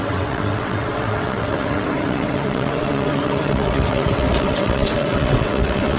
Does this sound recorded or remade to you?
remade